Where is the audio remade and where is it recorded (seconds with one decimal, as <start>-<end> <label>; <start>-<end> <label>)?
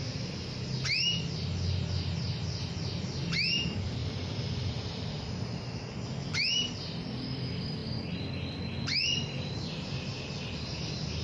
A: 0.0-4.0 recorded; 4.0-4.7 remade; 4.7-7.8 recorded; 7.8-9.5 remade; 9.5-11.2 recorded